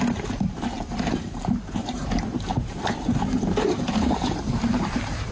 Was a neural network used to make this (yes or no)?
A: yes